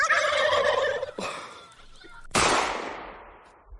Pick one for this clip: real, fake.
real